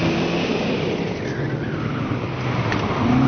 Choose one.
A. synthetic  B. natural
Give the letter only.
B